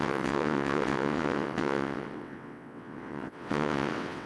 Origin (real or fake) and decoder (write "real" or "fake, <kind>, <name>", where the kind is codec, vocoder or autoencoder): fake, vocoder, WaveNeXt